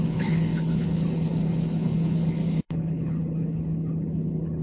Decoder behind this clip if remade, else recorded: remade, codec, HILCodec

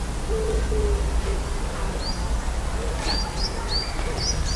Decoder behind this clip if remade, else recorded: recorded